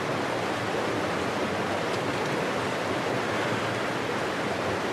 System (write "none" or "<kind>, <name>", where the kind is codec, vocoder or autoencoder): none